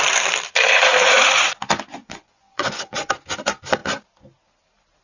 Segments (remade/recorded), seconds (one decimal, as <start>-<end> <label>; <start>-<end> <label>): 0.0-1.9 recorded; 1.9-3.1 remade; 3.1-5.0 recorded